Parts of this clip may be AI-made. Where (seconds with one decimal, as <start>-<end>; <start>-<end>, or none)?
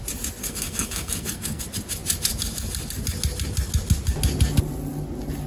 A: 0.4-1.6